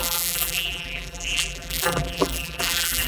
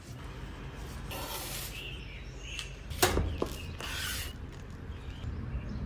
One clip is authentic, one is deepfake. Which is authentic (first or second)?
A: second